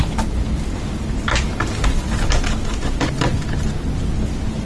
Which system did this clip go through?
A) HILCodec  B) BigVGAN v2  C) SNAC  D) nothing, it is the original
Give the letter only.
D